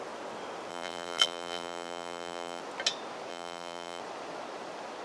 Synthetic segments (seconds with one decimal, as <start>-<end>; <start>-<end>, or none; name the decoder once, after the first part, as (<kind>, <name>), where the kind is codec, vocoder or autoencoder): 0.7-2.6 (vocoder, BigVGAN v2); 3.3-4.0